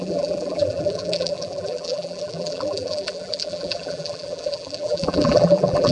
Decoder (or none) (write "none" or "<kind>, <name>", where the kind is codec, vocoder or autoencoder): vocoder, BigVGAN v2